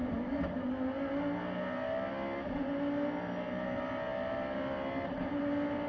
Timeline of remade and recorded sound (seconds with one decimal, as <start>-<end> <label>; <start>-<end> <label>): 0.0-5.9 recorded